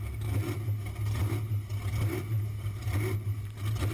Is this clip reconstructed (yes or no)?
no